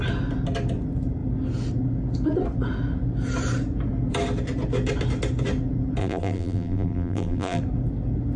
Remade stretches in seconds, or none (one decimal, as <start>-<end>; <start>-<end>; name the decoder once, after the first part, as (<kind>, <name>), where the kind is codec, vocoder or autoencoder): 6.0-7.6 (vocoder, BigVGAN v2)